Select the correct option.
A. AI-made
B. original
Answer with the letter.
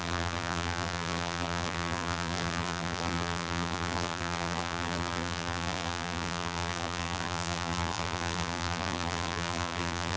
A